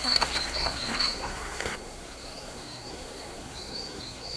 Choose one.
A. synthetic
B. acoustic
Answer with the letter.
A